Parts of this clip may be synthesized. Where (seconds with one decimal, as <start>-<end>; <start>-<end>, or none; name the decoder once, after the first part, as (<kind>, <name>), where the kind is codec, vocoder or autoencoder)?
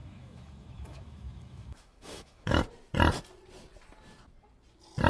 0.0-2.6 (autoencoder, DAC-VAE)